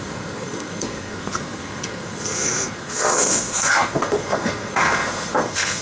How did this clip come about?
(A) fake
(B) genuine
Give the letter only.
A